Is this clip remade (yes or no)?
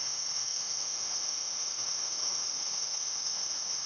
yes